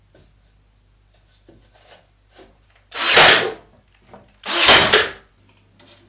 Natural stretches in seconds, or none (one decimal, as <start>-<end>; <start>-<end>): 0.0-6.1